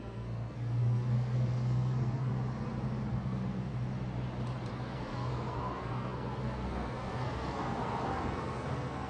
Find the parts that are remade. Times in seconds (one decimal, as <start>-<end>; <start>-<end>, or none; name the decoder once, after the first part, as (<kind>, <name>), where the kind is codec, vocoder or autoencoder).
0.0-2.3 (codec, SNAC); 3.1-3.7; 4.7-9.1